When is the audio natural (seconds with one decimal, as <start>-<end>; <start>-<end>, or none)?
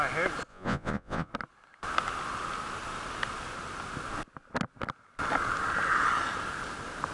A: 0.0-0.5; 1.3-7.1